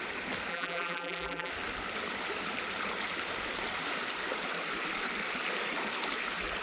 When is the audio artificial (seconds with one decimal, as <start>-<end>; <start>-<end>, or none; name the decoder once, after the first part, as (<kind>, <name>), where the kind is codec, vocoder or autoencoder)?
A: 0.5-1.5 (vocoder, BigVGAN v2)